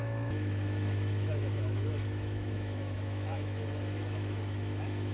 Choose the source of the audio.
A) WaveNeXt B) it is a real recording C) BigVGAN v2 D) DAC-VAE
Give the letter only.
D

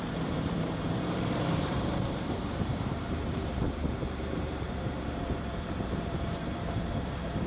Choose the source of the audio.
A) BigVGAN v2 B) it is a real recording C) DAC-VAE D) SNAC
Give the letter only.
A